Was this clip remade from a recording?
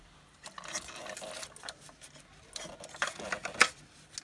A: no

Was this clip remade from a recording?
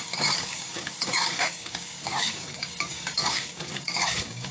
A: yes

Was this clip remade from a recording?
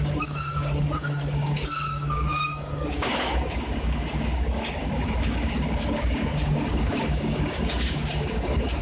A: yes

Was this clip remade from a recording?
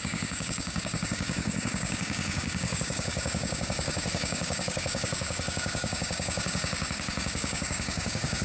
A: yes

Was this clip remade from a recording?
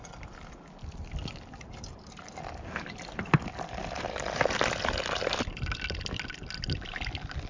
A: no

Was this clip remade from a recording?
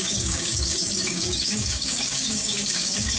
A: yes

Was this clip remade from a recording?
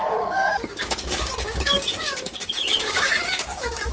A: yes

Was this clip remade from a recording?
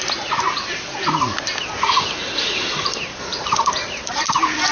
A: no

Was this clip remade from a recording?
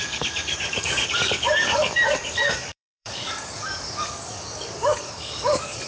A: yes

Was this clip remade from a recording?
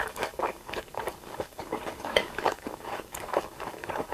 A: yes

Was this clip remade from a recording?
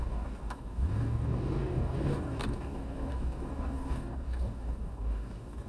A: yes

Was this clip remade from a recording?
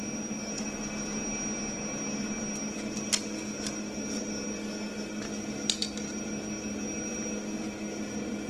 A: no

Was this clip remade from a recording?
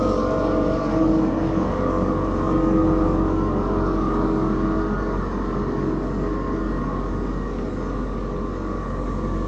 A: yes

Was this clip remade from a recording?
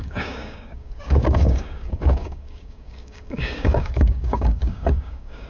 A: yes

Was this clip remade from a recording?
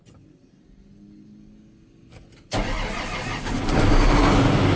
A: no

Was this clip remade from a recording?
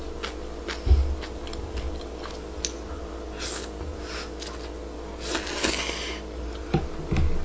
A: no